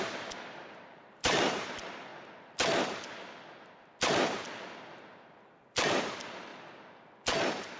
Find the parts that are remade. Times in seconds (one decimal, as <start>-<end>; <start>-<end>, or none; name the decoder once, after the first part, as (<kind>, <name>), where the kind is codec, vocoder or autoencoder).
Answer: 0.0-2.1 (vocoder, BigVGAN v2); 6.0-6.5